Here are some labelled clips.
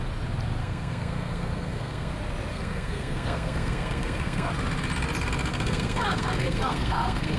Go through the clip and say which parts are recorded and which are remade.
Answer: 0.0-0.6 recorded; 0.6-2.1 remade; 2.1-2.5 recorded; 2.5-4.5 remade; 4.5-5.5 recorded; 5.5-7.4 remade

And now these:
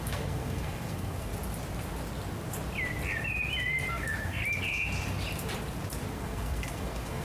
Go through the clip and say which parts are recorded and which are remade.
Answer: 0.0-1.3 remade; 1.3-3.9 recorded; 3.9-4.4 remade; 4.4-6.1 recorded; 6.1-7.2 remade

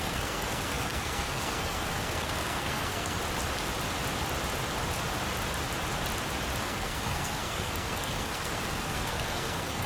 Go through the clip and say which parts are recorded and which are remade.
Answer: 0.0-3.2 remade; 3.2-6.6 recorded; 6.6-9.9 remade